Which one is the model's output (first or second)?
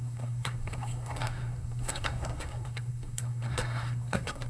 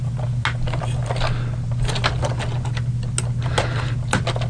first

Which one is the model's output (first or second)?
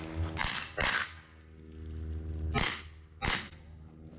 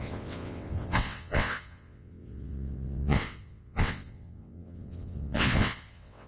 second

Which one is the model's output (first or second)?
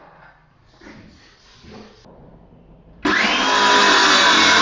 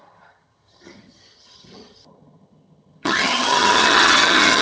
second